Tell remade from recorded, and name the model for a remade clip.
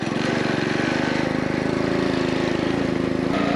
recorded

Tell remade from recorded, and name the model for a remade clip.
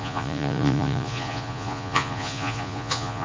remade, vocoder, Vocos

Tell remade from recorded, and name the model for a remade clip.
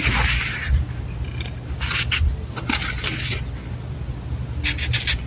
recorded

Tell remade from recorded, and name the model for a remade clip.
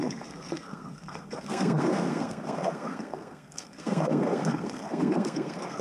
remade, codec, SNAC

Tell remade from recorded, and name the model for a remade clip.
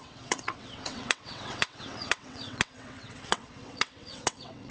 remade, vocoder, WaveNeXt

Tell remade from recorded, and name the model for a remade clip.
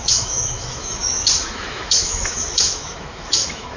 remade, autoencoder, DAC-VAE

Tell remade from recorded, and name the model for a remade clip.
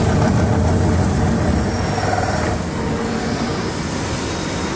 recorded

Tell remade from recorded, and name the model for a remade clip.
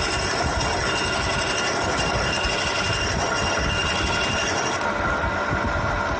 recorded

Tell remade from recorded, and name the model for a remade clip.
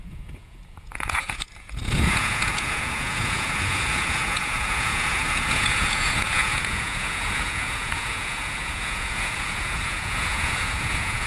remade, vocoder, Vocos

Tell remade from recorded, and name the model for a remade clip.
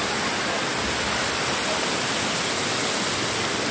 recorded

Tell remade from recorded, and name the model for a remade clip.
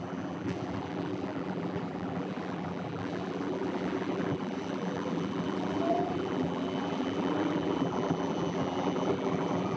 remade, vocoder, BigVGAN v2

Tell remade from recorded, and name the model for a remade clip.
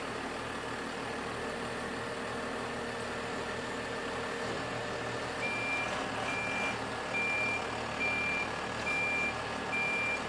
recorded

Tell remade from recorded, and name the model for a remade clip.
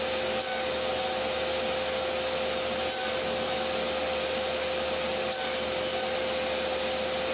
recorded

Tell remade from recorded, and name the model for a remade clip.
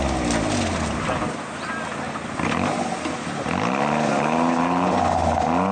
recorded